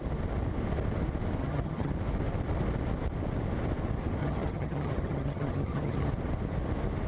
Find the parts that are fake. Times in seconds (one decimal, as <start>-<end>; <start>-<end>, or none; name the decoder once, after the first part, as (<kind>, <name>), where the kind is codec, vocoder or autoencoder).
1.4-1.9 (vocoder, HiFi-GAN); 4.2-6.1